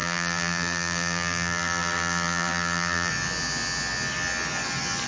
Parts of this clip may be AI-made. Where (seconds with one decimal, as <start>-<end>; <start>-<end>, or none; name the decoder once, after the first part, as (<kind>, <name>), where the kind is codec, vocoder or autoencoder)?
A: 0.0-3.1 (vocoder, BigVGAN v2)